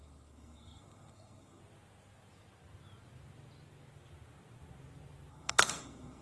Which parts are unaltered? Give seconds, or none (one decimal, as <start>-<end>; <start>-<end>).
1.6-5.3